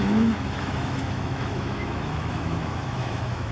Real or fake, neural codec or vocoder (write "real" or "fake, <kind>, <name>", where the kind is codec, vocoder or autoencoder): fake, autoencoder, DAC-VAE